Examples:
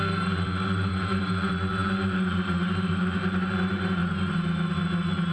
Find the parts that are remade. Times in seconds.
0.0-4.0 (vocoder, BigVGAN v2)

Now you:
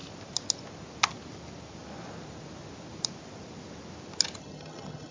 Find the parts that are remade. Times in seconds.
4.4-5.1 (vocoder, HiFi-GAN)

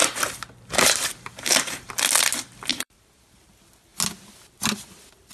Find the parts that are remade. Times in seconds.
0.0-1.9 (vocoder, BigVGAN v2); 2.7-3.3

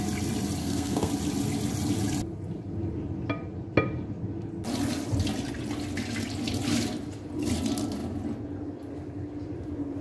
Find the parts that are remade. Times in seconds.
0.6-1.1 (codec, SNAC)

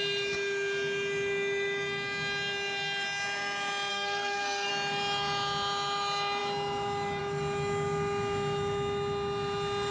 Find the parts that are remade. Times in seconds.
3.9-4.7 (codec, SNAC)